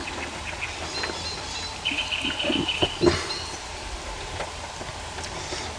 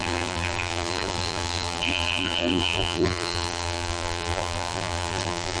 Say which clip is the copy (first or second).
second